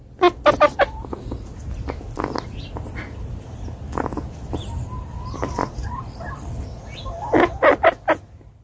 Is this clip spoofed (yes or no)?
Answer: no